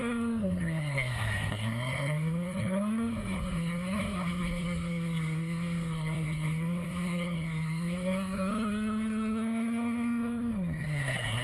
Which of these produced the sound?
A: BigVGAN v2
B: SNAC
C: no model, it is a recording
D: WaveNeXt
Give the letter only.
B